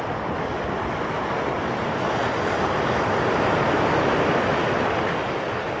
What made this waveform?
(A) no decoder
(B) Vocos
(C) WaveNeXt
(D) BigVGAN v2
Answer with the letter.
A